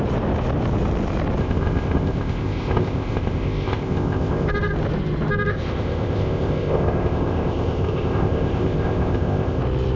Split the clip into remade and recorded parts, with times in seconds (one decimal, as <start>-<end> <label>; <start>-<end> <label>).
0.0-1.4 recorded; 1.4-4.5 remade; 4.5-5.5 recorded; 5.5-9.6 remade; 9.6-10.0 recorded